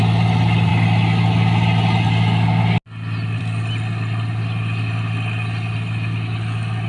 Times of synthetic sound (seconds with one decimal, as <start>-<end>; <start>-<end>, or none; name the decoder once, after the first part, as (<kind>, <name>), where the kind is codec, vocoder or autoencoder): none